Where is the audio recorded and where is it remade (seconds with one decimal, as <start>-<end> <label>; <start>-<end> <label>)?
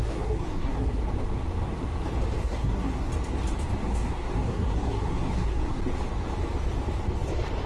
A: 0.0-1.0 remade; 1.0-2.4 recorded; 2.4-3.1 remade; 3.1-3.8 recorded; 3.8-5.8 remade; 5.8-7.7 recorded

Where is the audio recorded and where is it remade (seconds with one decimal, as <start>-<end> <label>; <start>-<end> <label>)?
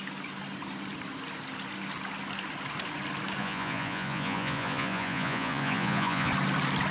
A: 0.0-3.4 recorded; 3.4-6.3 remade; 6.3-6.9 recorded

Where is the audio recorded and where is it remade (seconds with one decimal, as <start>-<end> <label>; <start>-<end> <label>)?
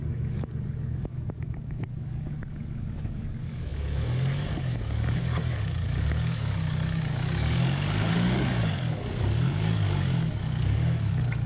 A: 0.0-11.5 remade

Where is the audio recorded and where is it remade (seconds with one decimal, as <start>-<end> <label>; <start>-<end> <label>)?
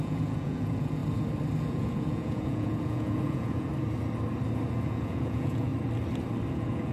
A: 0.0-1.0 remade; 1.0-1.6 recorded; 1.6-3.7 remade; 3.7-4.7 recorded; 4.7-5.7 remade; 5.7-6.5 recorded; 6.5-6.9 remade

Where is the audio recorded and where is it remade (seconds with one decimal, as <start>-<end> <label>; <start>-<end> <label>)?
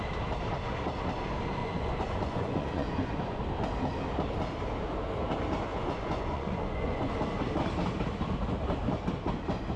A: 0.0-1.6 recorded; 1.6-3.4 remade; 3.4-5.7 recorded; 5.7-7.1 remade; 7.1-9.8 recorded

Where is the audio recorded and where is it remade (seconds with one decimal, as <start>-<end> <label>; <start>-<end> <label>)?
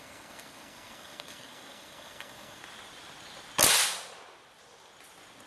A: 0.0-2.6 remade; 2.6-5.5 recorded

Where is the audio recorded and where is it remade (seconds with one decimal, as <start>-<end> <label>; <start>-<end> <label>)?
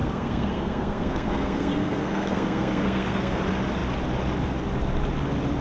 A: 0.0-3.4 remade; 3.4-5.6 recorded